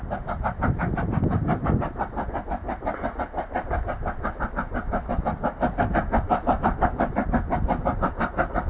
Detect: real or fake real